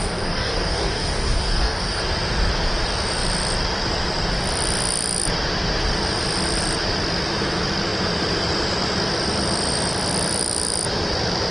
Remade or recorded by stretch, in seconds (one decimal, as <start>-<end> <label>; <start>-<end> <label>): 0.0-2.0 remade; 2.0-11.5 recorded